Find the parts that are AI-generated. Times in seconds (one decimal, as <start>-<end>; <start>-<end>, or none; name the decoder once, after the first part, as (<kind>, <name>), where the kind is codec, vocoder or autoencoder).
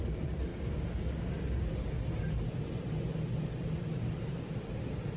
0.5-2.0 (codec, DAC)